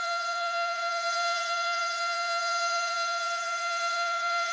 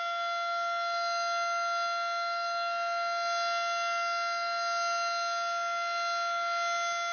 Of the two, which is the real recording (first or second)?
second